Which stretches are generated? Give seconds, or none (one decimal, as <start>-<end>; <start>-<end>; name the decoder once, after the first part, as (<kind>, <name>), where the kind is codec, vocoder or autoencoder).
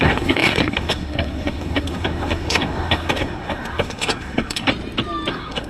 0.0-4.7 (codec, SNAC); 5.3-5.7